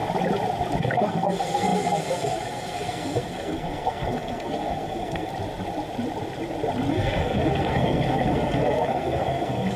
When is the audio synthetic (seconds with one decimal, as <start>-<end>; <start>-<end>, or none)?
0.8-5.3; 6.9-9.8